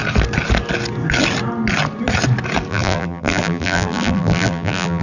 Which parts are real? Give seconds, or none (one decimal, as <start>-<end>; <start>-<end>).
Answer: 0.0-2.7